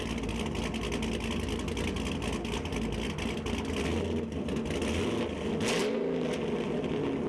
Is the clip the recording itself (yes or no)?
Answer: yes